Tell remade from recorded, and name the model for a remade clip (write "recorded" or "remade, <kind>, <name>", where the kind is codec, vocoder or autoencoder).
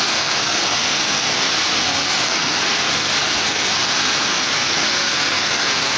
remade, codec, SNAC